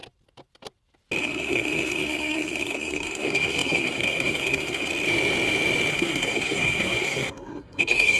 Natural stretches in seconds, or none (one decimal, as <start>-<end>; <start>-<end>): 0.0-1.2; 4.9-5.9